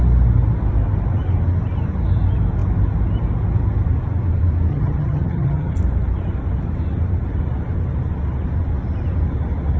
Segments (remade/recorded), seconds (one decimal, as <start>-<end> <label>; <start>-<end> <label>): 0.0-4.7 recorded; 4.7-5.7 remade; 5.7-9.8 recorded